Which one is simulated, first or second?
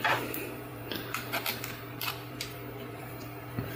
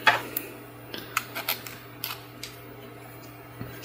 first